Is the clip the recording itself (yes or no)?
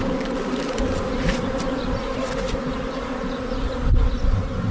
yes